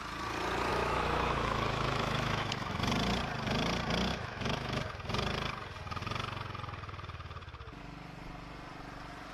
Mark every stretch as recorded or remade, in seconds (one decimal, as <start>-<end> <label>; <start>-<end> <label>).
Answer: 0.0-0.7 recorded; 0.7-2.8 remade; 2.8-4.1 recorded; 4.1-4.8 remade; 4.8-9.3 recorded